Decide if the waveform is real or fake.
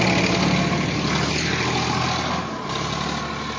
real